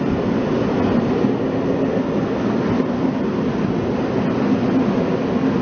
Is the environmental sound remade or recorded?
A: recorded